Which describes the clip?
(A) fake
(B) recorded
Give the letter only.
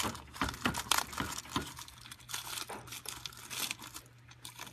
B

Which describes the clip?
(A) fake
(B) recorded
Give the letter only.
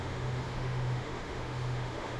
A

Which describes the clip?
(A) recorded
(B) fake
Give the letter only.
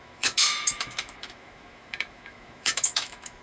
B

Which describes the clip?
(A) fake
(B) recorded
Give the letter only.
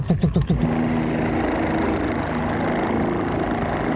B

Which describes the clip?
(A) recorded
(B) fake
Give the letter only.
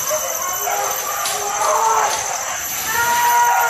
A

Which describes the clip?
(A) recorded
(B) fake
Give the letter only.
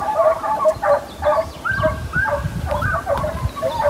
A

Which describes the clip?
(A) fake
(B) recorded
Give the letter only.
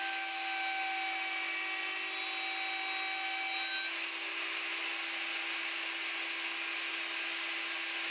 B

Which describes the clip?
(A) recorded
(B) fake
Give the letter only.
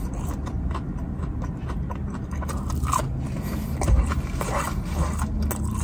A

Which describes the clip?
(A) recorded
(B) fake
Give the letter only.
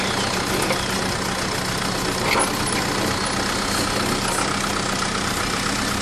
A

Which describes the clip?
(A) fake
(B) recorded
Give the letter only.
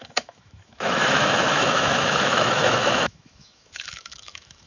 A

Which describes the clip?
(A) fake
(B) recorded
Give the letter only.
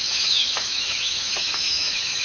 A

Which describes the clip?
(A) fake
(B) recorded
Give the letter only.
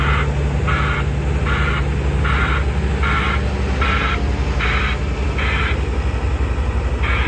B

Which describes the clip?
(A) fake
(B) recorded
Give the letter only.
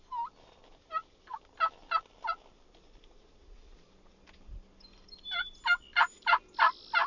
B